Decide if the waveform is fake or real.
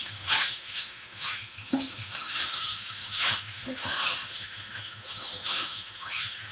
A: fake